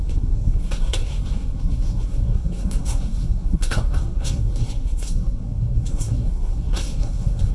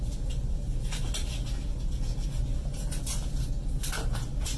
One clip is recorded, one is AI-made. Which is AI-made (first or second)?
first